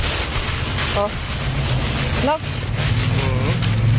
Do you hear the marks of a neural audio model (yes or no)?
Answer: no